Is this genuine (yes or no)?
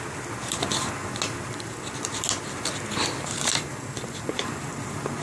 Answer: yes